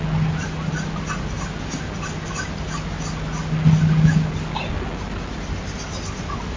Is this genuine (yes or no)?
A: yes